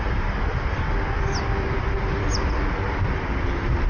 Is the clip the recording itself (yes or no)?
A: yes